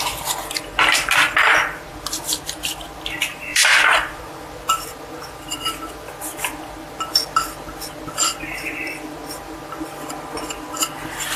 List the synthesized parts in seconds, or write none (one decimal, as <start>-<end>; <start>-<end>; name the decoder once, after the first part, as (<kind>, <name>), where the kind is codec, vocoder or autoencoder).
3.5-4.2 (vocoder, BigVGAN v2)